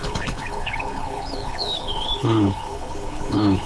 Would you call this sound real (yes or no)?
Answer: no